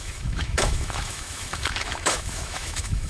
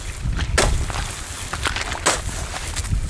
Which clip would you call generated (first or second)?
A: first